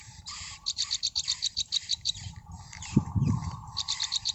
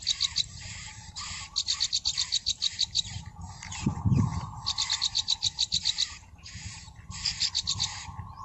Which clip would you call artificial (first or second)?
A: first